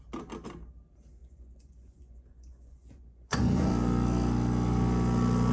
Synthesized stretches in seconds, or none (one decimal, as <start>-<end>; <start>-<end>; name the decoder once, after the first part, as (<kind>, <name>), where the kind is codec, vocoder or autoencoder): 1.2-3.7 (vocoder, Vocos)